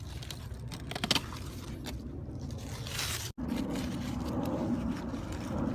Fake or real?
real